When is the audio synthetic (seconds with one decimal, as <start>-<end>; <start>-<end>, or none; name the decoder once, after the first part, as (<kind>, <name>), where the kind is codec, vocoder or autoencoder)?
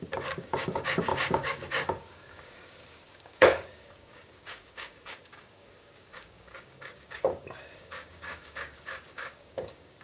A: 0.0-10.0 (codec, DAC)